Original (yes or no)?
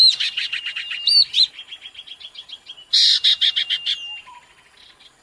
yes